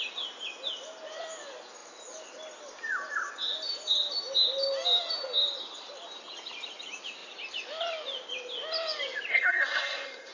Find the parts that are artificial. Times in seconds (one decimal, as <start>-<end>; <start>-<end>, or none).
9.3-10.3